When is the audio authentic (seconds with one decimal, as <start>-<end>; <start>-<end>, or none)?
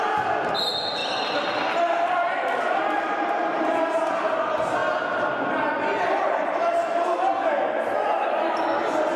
0.0-1.0; 1.5-9.2